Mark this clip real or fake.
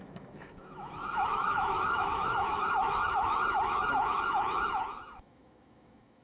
fake